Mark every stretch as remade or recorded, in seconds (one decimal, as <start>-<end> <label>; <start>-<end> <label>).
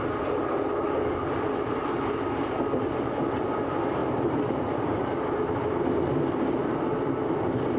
0.0-4.0 recorded; 4.0-5.9 remade; 5.9-7.8 recorded